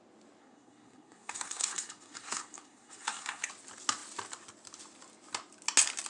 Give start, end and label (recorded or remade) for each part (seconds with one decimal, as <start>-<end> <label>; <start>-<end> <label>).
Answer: 0.0-0.4 recorded; 0.4-3.5 remade; 3.5-6.1 recorded